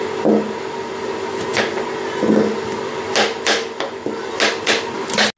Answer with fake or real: real